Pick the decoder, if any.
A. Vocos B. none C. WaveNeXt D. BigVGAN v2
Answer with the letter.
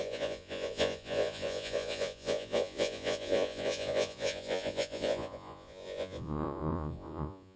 A